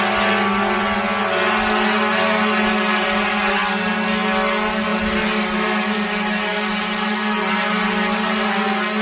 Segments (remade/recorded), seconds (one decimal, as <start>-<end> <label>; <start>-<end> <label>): 0.0-9.0 recorded